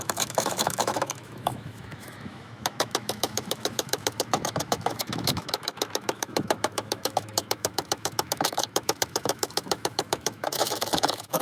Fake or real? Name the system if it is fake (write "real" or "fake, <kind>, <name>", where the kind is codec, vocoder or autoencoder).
fake, autoencoder, DAC-VAE